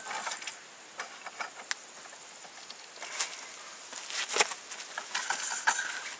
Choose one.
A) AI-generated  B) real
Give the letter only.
B